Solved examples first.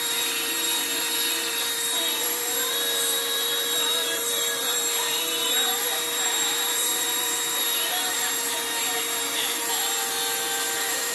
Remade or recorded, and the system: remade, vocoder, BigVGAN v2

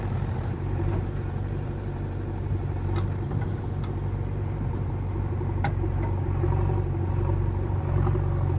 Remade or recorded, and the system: remade, vocoder, BigVGAN v2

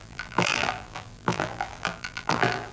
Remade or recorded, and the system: remade, vocoder, BigVGAN v2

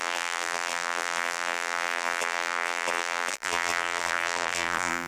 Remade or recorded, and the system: remade, vocoder, BigVGAN v2